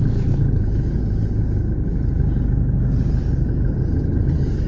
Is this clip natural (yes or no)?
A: yes